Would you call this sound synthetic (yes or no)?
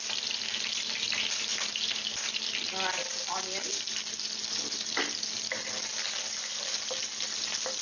no